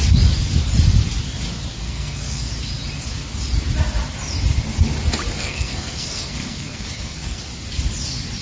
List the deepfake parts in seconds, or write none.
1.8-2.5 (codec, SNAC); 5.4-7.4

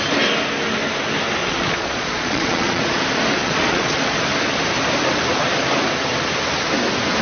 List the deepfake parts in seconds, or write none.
1.4-2.8 (vocoder, Vocos); 3.4-4.2

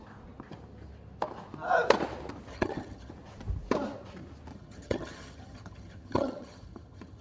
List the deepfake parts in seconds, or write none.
2.5-3.1 (vocoder, HiFi-GAN); 4.5-7.2

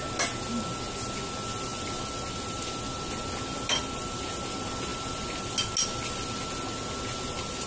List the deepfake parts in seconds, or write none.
none

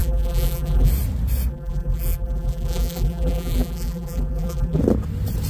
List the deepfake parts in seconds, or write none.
0.0-0.9 (vocoder, BigVGAN v2); 1.5-4.8

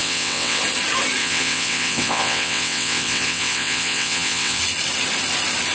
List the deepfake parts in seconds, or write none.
0.0-0.6 (vocoder, WaveNeXt); 1.2-4.6

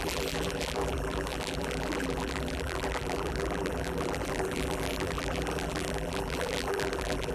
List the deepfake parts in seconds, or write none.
0.0-7.3 (vocoder, BigVGAN v2)

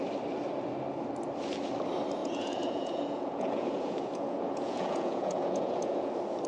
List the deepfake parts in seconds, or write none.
2.2-6.1 (vocoder, Vocos)